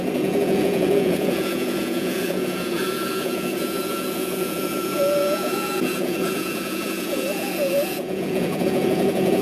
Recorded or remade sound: remade